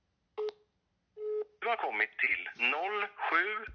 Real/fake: real